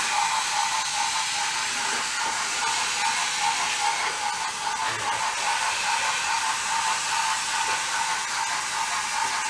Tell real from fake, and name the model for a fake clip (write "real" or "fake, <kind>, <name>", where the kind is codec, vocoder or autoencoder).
real